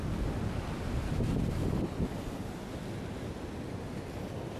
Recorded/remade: recorded